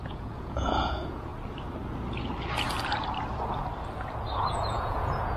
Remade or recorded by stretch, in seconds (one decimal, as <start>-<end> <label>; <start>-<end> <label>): 0.0-1.3 remade; 1.3-4.5 recorded; 4.5-5.4 remade